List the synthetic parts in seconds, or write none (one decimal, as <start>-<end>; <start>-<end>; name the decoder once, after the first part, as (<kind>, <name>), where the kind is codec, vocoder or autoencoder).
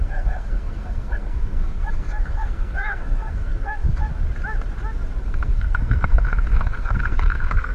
0.0-4.1 (codec, SNAC); 5.2-7.7